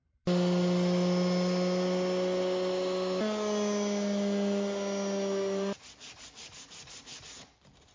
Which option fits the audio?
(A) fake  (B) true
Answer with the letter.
B